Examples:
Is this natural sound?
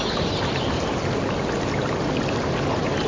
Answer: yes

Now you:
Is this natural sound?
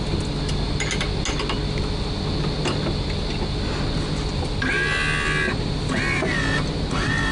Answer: yes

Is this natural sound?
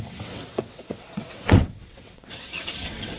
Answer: no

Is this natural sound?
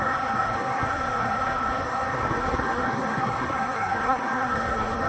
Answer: no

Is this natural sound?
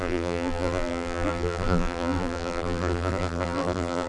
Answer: no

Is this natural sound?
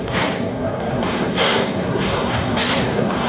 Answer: no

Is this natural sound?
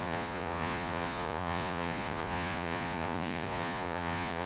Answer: no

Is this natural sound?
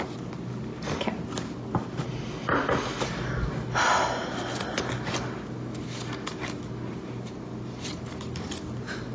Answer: yes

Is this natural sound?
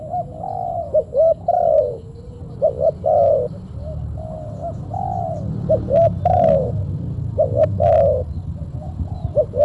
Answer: yes